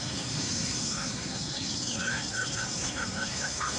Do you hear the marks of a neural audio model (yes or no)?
yes